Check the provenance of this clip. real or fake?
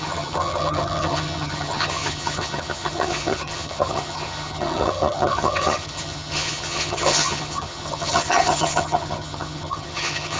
fake